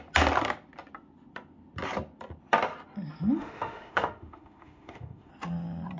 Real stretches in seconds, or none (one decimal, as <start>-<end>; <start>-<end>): 0.0-3.4; 5.3-6.0